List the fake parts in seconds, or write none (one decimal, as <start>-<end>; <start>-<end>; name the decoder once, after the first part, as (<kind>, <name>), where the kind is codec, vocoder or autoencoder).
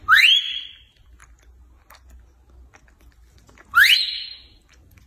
0.0-1.2 (vocoder, BigVGAN v2); 4.2-5.1